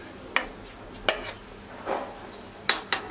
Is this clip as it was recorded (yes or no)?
yes